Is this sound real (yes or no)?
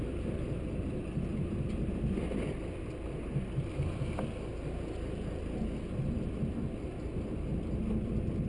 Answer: yes